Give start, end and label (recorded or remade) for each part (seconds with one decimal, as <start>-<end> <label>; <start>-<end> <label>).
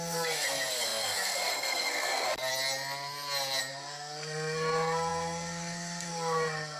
0.0-2.5 remade; 2.5-3.7 recorded; 3.7-6.8 remade